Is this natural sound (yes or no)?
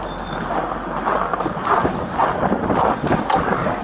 yes